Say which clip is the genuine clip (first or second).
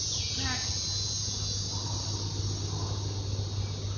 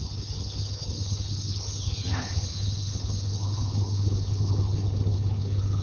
first